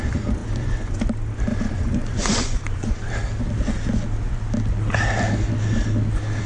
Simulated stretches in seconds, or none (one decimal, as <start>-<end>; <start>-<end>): 0.4-1.0; 1.5-3.1